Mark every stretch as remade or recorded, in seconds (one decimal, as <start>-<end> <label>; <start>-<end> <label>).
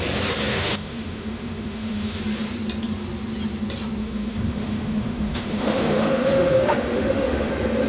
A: 0.0-0.5 recorded; 0.5-2.2 remade; 2.2-4.0 recorded; 4.0-7.5 remade; 7.5-7.9 recorded